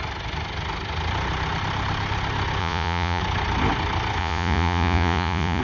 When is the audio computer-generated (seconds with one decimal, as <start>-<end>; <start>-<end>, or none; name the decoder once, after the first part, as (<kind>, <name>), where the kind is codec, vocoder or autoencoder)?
2.6-3.2 (vocoder, Vocos); 4.2-5.6

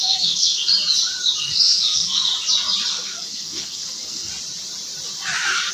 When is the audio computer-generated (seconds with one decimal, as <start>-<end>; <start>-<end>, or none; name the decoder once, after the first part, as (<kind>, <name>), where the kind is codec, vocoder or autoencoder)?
0.0-0.7 (codec, SNAC); 1.4-2.3; 2.9-4.3